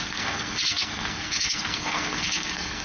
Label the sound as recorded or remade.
remade